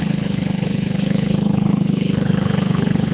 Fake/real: fake